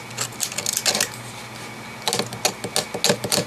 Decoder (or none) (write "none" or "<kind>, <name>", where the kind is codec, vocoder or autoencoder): none